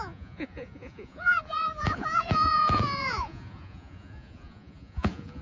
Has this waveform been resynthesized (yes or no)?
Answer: yes